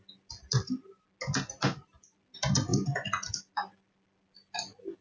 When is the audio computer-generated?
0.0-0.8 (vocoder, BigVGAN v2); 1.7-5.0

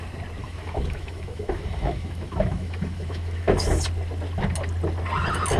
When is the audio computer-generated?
0.4-3.8 (autoencoder, DAC-VAE)